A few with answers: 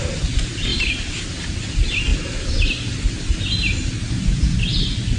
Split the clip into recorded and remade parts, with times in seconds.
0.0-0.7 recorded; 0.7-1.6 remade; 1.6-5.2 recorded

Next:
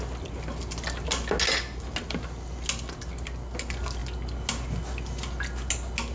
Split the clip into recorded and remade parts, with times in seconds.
0.0-6.1 recorded

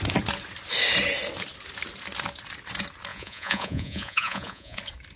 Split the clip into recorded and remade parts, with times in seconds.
0.0-3.1 recorded; 3.1-4.8 remade; 4.8-5.2 recorded

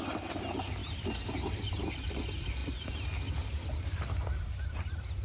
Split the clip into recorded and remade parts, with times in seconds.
0.0-0.8 recorded; 0.8-1.8 remade; 1.8-2.6 recorded; 2.6-3.5 remade; 3.5-5.2 recorded

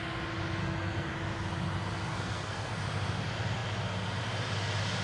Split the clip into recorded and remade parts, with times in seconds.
0.0-0.6 recorded; 0.6-1.1 remade; 1.1-2.1 recorded; 2.1-2.8 remade; 2.8-5.0 recorded

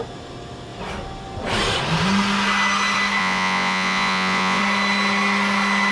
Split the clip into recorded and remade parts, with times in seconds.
0.0-3.2 recorded; 3.2-4.6 remade; 4.6-5.9 recorded

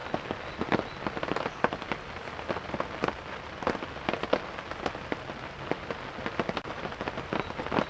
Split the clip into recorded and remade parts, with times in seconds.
0.0-7.9 recorded